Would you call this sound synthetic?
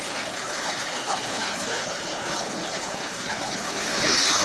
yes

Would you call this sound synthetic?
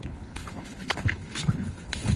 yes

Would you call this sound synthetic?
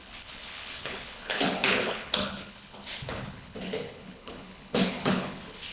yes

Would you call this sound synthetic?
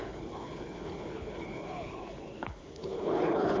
yes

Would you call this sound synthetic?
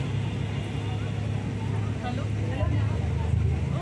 no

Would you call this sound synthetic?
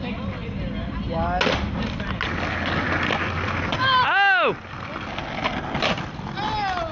no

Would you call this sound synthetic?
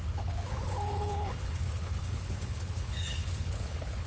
yes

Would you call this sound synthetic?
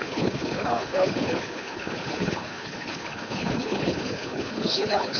yes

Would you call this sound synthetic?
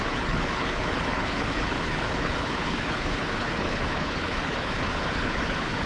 yes